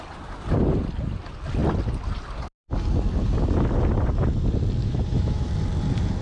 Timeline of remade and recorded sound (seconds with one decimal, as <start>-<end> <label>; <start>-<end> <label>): 0.0-4.8 recorded; 4.8-5.5 remade; 5.5-6.2 recorded